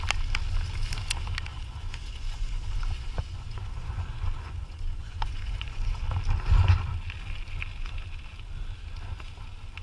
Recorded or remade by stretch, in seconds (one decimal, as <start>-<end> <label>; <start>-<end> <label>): 0.0-1.5 recorded; 1.5-6.0 remade; 6.0-9.8 recorded